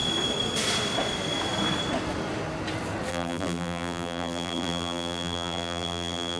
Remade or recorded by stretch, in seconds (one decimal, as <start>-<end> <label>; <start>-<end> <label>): 0.0-3.1 recorded; 3.1-6.4 remade